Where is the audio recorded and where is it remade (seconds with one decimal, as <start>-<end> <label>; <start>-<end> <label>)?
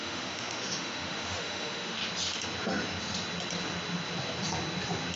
0.0-2.0 remade; 2.0-5.2 recorded